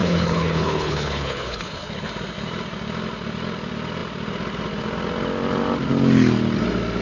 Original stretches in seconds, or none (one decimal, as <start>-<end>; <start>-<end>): 2.1-7.0